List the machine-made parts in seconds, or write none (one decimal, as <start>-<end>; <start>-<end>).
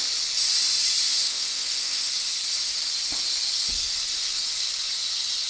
1.0-2.1